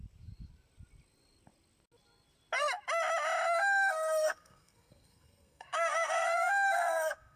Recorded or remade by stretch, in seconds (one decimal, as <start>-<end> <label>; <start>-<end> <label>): 0.0-3.6 recorded; 3.6-7.4 remade